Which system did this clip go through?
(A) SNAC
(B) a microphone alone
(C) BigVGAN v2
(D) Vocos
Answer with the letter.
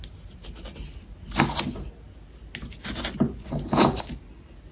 B